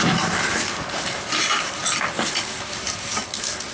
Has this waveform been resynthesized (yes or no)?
no